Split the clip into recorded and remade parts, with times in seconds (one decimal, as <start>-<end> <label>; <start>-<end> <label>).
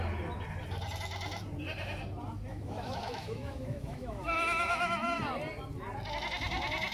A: 0.0-2.5 recorded; 2.5-5.2 remade; 5.2-6.9 recorded